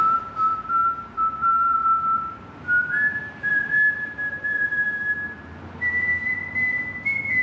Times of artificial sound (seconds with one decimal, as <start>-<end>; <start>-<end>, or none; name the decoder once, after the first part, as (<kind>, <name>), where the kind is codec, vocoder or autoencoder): none